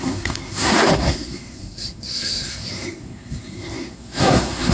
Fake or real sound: fake